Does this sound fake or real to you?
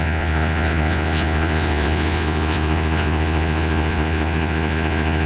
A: fake